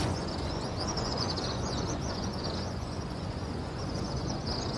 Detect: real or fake fake